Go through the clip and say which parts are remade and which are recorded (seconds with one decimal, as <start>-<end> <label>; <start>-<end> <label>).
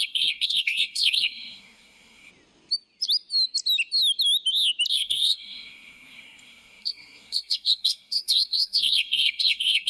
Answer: 0.0-2.3 remade; 2.3-4.9 recorded; 4.9-9.9 remade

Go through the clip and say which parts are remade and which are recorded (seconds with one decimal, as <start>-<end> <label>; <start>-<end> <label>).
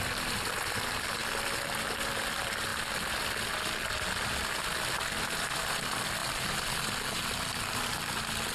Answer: 0.0-6.2 recorded; 6.2-7.9 remade; 7.9-8.5 recorded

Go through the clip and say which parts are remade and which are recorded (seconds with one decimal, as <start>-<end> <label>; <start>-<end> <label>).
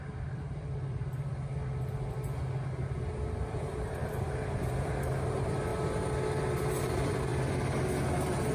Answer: 0.0-1.5 remade; 1.5-2.8 recorded; 2.8-5.7 remade; 5.7-6.8 recorded; 6.8-7.3 remade; 7.3-8.1 recorded; 8.1-8.5 remade